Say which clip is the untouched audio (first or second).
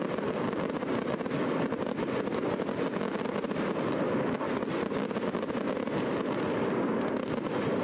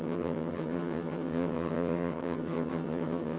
first